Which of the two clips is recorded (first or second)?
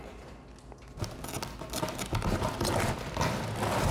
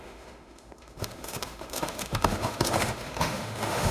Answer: first